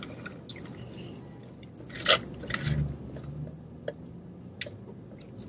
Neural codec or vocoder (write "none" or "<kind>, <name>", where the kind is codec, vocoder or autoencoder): none